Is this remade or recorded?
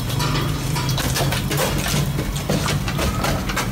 recorded